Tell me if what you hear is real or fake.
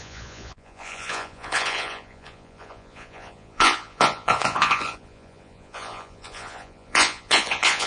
fake